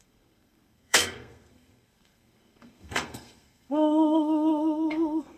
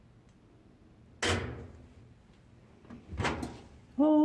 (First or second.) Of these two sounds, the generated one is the first